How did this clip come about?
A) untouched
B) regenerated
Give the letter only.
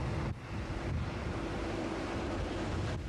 A